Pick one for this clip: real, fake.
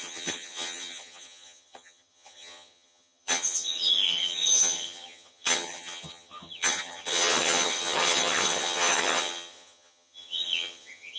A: fake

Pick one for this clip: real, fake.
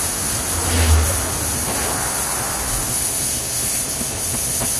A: real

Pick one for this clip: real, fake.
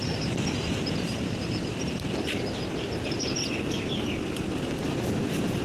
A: real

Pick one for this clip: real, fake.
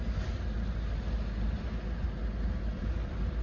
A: real